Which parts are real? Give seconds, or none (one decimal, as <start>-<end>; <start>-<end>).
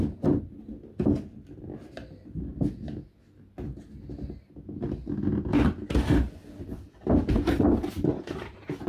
2.5-6.5